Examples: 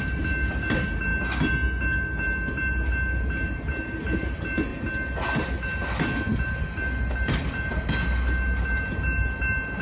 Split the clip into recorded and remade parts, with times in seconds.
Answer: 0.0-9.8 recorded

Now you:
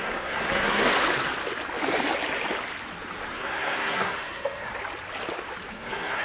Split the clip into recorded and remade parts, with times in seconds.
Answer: 0.0-0.9 remade; 0.9-3.3 recorded; 3.3-4.7 remade; 4.7-5.7 recorded; 5.7-6.2 remade

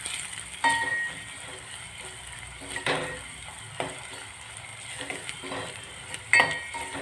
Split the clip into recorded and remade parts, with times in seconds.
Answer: 0.0-4.7 recorded; 4.7-5.8 remade; 5.8-7.0 recorded

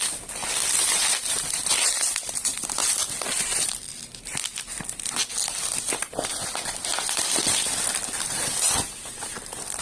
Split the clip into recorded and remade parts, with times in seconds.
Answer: 0.0-2.8 remade; 2.8-3.3 recorded; 3.3-3.9 remade; 3.9-4.6 recorded; 4.6-5.2 remade; 5.2-6.3 recorded; 6.3-9.8 remade

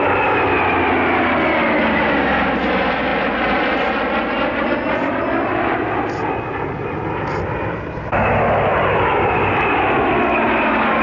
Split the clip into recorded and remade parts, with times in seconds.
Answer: 0.0-8.7 recorded; 8.7-9.3 remade; 9.3-11.0 recorded

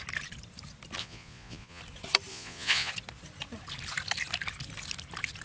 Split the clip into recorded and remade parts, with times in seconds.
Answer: 0.0-1.0 recorded; 1.0-1.8 remade; 1.8-2.3 recorded; 2.3-2.9 remade; 2.9-5.4 recorded

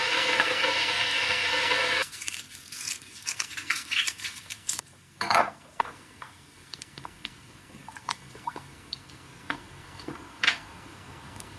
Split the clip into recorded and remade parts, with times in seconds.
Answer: 0.0-11.6 remade